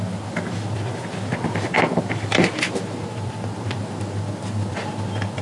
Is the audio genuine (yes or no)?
yes